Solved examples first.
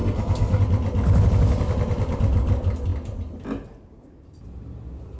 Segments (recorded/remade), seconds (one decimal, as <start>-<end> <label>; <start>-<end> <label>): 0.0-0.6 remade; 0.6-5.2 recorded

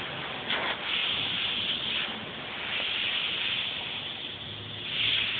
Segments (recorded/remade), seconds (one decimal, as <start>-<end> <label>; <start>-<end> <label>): 0.0-5.4 recorded

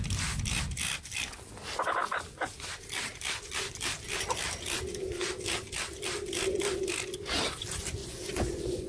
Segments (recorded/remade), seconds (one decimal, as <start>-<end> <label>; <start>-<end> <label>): 0.0-8.0 recorded; 8.0-8.9 remade

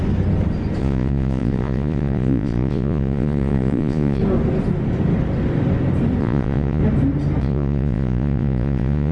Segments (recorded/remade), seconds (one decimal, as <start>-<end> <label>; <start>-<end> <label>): 0.0-0.8 recorded; 0.8-4.2 remade; 4.2-6.2 recorded; 6.2-6.8 remade; 6.8-7.4 recorded; 7.4-9.1 remade